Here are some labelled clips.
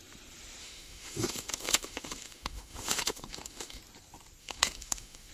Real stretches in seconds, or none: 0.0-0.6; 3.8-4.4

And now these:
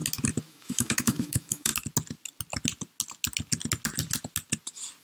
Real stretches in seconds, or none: 0.0-0.5; 1.7-5.0